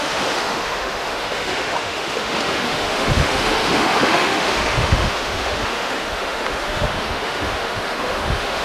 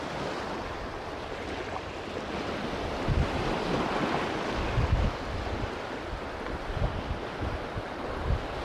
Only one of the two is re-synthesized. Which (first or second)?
first